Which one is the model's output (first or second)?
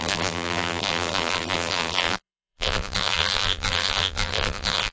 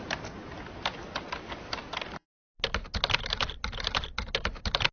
first